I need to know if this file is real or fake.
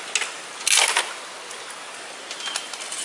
real